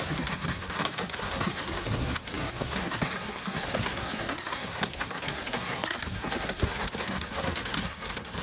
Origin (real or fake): fake